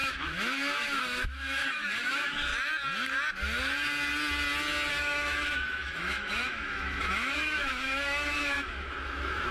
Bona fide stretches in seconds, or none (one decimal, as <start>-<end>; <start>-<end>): 2.5-4.9